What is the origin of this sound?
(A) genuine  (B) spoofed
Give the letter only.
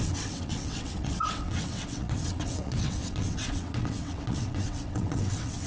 B